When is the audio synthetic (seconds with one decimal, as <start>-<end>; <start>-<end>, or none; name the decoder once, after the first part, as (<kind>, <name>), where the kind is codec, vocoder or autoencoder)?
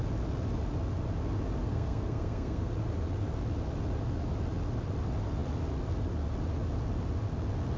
1.6-2.7 (codec, SNAC)